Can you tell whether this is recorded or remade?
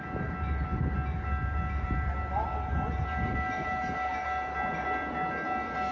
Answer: recorded